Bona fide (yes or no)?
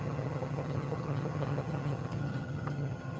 no